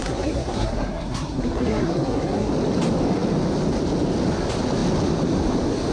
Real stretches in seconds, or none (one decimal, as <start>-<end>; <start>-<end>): 2.5-5.9

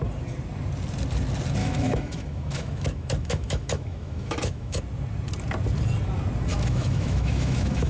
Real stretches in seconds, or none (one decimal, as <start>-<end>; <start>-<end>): 0.0-1.6; 4.8-6.5

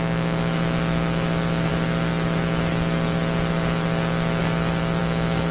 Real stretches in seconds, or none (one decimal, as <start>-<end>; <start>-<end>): 1.7-5.0

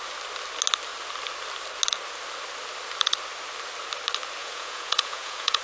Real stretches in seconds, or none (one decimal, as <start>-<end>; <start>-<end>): 0.0-4.4

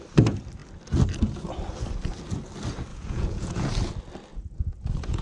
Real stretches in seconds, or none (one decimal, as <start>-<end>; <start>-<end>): 0.0-2.9; 3.7-4.3